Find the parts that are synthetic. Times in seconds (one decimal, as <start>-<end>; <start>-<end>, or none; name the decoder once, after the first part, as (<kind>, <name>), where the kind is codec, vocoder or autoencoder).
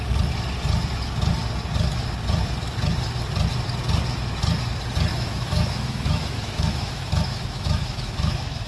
5.1-8.7 (autoencoder, DAC-VAE)